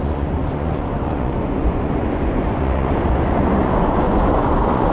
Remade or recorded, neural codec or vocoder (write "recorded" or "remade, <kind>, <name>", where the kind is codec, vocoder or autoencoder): remade, vocoder, Vocos